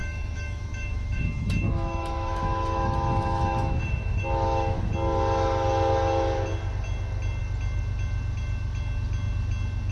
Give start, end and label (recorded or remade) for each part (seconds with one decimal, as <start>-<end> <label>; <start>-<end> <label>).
0.0-4.9 remade; 4.9-9.9 recorded